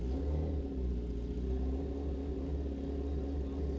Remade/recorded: recorded